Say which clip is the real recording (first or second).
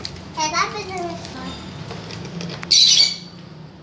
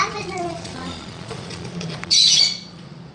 first